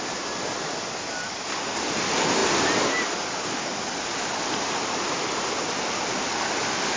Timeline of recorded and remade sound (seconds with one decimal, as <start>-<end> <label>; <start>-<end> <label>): 0.0-7.0 recorded